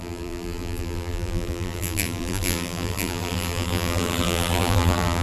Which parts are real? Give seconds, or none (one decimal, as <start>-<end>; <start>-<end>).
none